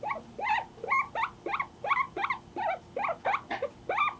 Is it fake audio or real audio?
real